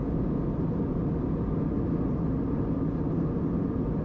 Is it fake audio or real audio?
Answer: real